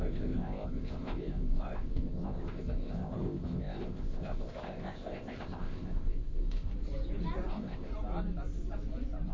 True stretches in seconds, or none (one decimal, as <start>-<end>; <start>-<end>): 6.7-7.5; 7.9-9.3